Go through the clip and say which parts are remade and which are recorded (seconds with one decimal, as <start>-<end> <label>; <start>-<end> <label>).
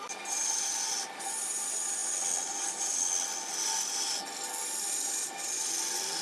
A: 0.0-6.2 recorded